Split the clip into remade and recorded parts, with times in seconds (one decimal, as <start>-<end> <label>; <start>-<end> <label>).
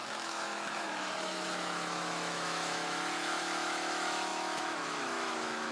0.0-5.7 remade